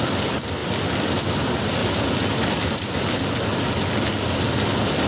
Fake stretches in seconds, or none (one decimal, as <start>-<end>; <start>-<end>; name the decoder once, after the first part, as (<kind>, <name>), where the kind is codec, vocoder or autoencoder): 0.6-1.2 (vocoder, BigVGAN v2); 1.8-3.0